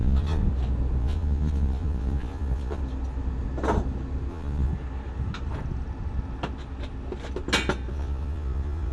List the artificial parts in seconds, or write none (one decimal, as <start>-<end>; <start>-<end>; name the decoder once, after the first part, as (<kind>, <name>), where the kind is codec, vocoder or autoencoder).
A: 0.0-0.4 (vocoder, Vocos); 1.0-2.8; 4.3-4.7; 7.9-8.9